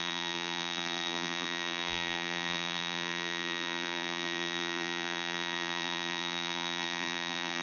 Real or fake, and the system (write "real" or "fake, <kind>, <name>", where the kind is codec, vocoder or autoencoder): fake, vocoder, BigVGAN v2